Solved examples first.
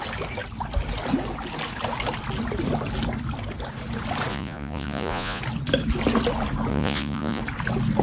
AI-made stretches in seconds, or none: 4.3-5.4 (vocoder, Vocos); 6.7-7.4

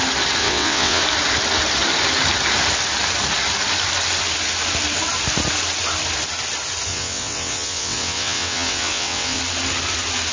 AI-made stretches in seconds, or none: 0.4-1.0 (vocoder, WaveNeXt); 6.9-9.4

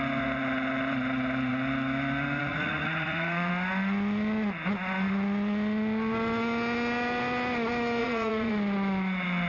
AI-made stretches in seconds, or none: 2.4-3.5 (vocoder, Vocos); 8.0-8.5